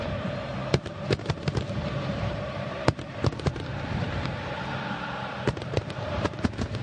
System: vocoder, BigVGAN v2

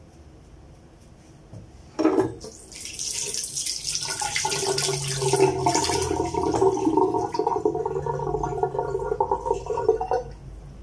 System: none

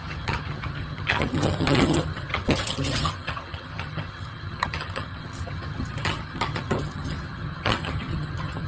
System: vocoder, HiFi-GAN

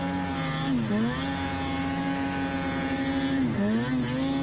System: none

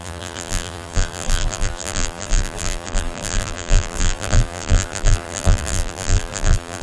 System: vocoder, BigVGAN v2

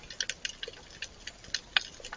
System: none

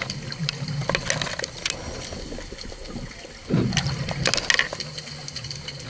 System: none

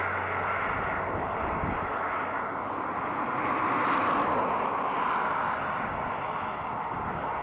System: none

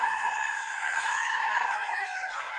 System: codec, SNAC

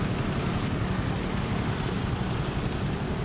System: none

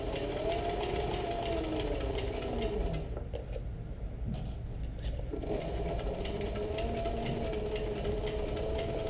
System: none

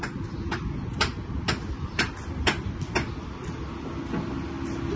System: none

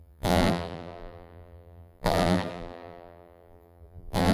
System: vocoder, BigVGAN v2